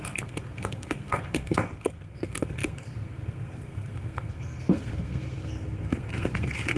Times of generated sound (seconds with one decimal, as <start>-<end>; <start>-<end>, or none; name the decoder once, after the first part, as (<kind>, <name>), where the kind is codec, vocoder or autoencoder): 0.0-6.8 (codec, SNAC)